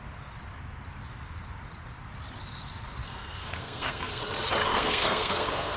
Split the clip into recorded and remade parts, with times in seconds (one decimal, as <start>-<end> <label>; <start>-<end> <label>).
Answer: 0.0-3.0 recorded; 3.0-4.2 remade; 4.2-4.7 recorded; 4.7-5.8 remade